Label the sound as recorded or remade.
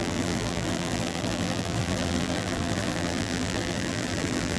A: remade